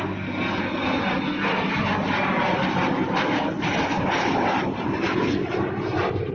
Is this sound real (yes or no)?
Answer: yes